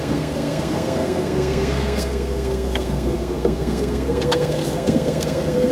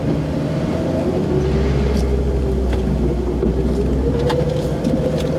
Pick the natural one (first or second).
second